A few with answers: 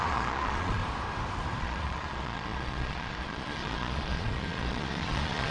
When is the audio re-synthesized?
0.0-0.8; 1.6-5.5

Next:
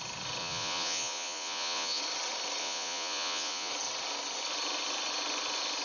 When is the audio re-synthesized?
0.4-2.0; 2.6-3.7

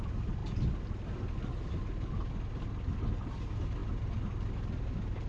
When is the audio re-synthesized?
none

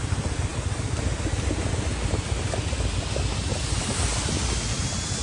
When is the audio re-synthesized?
none